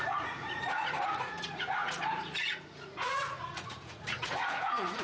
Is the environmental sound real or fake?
fake